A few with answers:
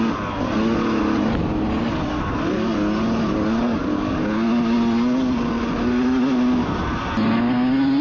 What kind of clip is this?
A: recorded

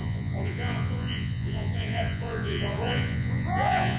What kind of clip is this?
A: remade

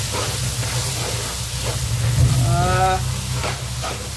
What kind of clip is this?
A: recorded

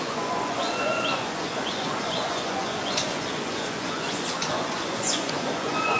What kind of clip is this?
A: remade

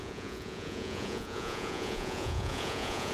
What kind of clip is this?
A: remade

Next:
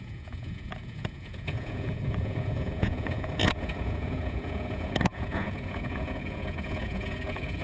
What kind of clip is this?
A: remade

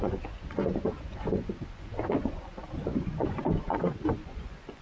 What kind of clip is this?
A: remade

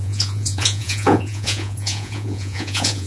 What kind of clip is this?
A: remade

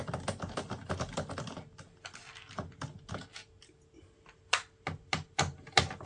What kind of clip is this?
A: recorded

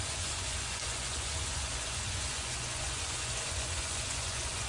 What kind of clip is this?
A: remade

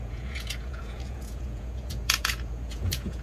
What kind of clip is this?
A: remade